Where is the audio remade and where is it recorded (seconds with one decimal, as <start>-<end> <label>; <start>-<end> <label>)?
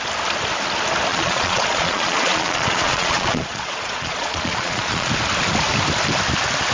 0.0-1.1 recorded; 1.1-5.1 remade; 5.1-6.7 recorded